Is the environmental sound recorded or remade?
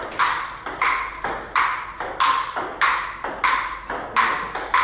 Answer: recorded